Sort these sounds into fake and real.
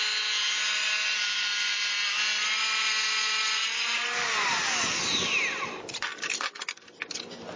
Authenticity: real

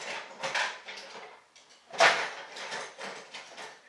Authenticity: real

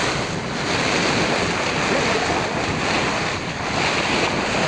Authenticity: real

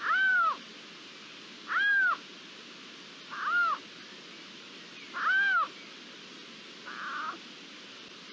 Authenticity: real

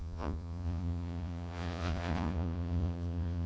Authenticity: fake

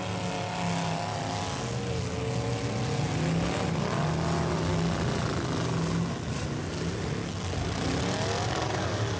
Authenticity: real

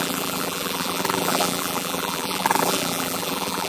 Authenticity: fake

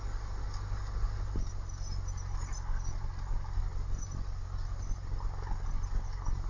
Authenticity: real